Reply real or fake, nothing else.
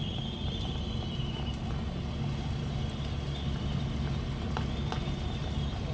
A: real